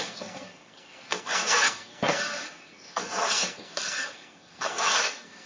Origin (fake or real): fake